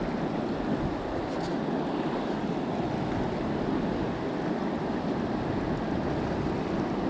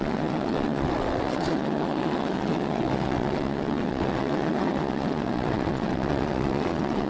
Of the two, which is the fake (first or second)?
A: second